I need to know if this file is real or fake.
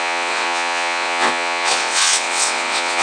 fake